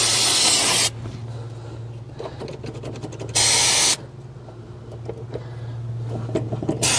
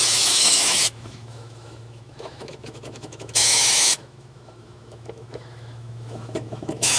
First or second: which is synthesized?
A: second